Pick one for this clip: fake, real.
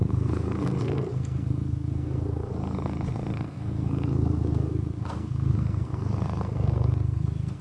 fake